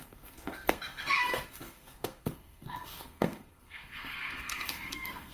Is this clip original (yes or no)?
no